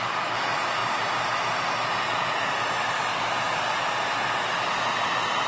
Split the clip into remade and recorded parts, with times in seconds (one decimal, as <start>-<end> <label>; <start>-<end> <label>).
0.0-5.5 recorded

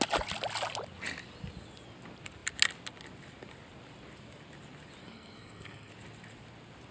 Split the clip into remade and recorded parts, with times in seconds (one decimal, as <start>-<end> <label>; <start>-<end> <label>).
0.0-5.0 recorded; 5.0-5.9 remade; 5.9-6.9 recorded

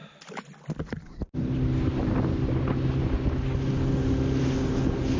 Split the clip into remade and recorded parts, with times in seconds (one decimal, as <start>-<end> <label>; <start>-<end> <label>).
0.0-5.2 recorded

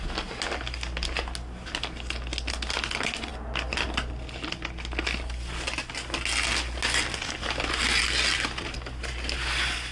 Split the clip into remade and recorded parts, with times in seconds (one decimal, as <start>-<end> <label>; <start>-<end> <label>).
0.0-9.9 recorded